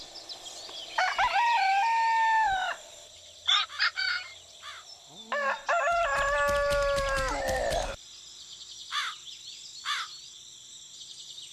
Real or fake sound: real